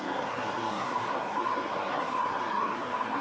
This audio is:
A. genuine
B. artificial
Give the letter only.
B